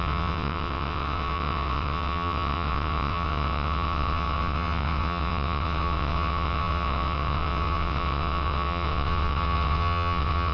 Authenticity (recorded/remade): remade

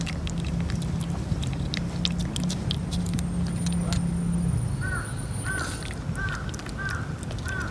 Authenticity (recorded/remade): recorded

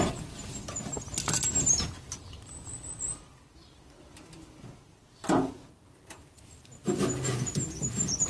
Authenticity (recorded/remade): recorded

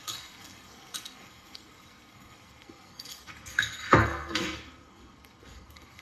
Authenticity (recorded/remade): remade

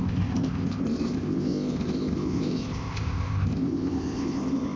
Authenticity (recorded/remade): remade